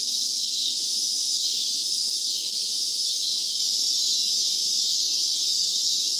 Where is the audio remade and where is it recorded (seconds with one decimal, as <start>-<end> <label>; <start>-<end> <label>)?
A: 0.0-0.8 remade; 0.8-1.9 recorded; 1.9-2.7 remade; 2.7-4.9 recorded; 4.9-6.2 remade